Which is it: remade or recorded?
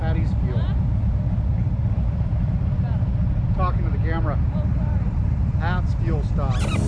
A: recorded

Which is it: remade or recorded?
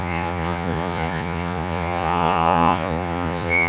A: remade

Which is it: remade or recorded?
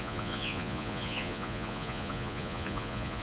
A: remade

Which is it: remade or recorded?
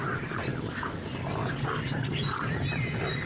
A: recorded